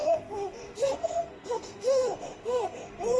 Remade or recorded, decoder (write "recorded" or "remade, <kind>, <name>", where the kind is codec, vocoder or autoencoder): remade, codec, SNAC